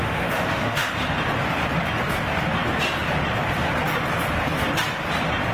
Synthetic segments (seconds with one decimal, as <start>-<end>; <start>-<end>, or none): 0.0-0.9